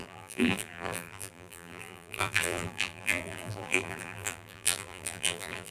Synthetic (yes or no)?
yes